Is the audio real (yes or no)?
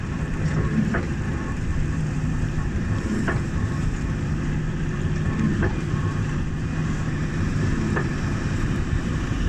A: no